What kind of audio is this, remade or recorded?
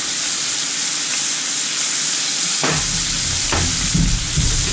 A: recorded